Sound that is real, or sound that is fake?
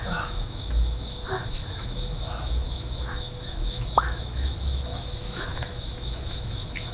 fake